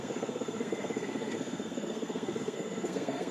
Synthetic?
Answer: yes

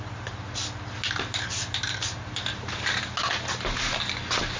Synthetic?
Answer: no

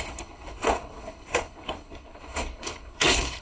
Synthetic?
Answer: yes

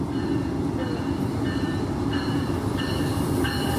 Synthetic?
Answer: no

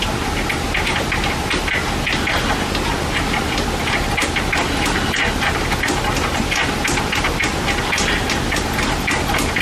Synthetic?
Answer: no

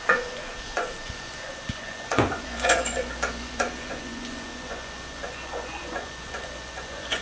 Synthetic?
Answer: yes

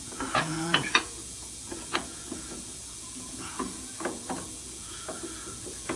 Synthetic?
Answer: yes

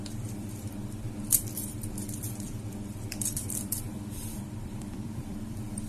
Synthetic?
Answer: yes